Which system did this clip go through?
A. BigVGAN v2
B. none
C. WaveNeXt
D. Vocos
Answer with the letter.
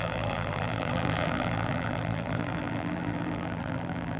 A